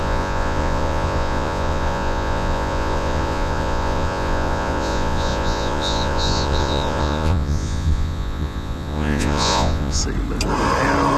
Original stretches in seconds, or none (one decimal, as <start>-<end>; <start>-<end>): 10.0-11.2